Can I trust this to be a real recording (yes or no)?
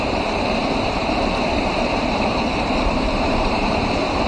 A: no